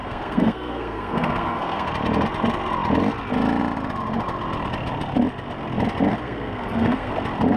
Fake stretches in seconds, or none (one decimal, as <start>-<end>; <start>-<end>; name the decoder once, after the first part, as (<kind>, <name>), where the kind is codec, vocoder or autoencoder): 0.0-1.9 (codec, SNAC); 6.1-7.1